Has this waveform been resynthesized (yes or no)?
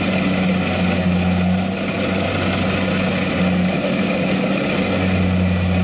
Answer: no